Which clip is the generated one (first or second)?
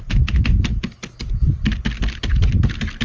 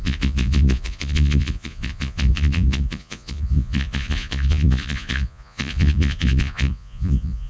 second